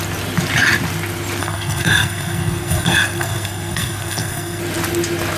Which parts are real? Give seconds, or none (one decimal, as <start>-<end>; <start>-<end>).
0.0-1.4; 4.6-5.4